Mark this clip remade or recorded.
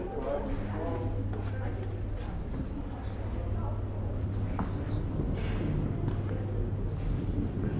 recorded